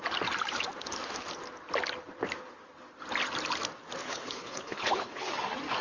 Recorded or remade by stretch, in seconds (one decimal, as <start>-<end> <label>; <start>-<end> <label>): 0.0-4.0 recorded; 4.0-5.3 remade; 5.3-5.8 recorded